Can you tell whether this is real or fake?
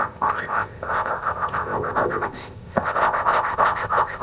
fake